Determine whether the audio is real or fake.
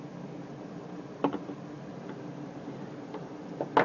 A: real